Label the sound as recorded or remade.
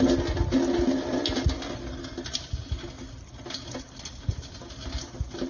recorded